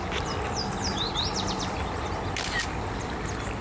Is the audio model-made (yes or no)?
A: no